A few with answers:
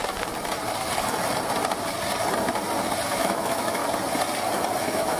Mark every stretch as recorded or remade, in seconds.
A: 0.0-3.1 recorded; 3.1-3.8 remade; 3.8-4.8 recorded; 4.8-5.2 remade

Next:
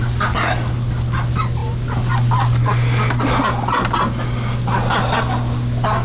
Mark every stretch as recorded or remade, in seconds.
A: 0.0-6.0 recorded

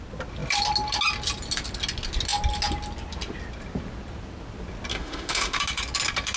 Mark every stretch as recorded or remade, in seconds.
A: 0.0-4.9 recorded; 4.9-5.6 remade; 5.6-6.4 recorded

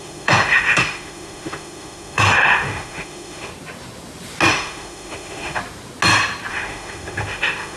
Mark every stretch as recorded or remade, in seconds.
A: 0.0-3.5 remade; 3.5-4.5 recorded; 4.5-5.6 remade; 5.6-6.5 recorded; 6.5-7.8 remade